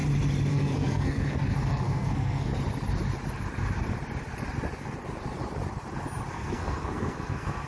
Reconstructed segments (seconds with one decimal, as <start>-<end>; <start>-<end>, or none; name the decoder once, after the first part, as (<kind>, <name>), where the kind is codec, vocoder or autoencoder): 0.5-2.5 (codec, SNAC); 6.3-7.7